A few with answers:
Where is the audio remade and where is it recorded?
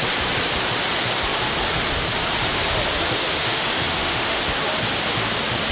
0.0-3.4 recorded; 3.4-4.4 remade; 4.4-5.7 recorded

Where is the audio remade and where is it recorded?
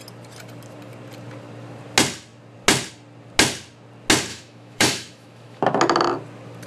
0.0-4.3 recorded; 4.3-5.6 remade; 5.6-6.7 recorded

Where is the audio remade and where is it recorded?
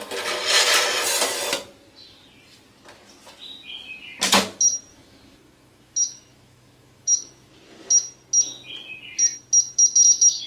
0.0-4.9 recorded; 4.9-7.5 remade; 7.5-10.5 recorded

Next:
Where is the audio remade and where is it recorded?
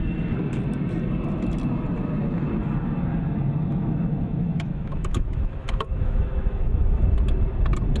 0.0-3.7 recorded; 3.7-7.0 remade; 7.0-8.0 recorded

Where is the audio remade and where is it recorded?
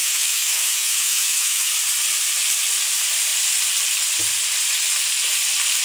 0.0-1.7 remade; 1.7-5.8 recorded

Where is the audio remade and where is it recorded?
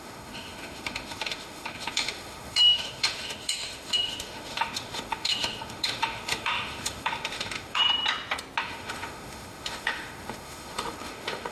0.0-7.8 remade; 7.8-8.6 recorded; 8.6-11.5 remade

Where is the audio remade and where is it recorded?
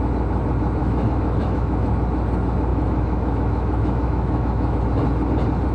0.0-0.8 recorded; 0.8-1.9 remade; 1.9-2.7 recorded; 2.7-4.8 remade; 4.8-5.7 recorded